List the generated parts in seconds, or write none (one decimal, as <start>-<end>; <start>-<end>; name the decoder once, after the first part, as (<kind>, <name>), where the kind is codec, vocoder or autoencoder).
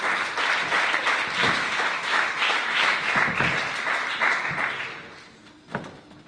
1.4-3.1 (autoencoder, DAC-VAE)